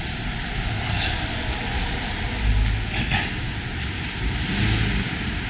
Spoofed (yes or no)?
no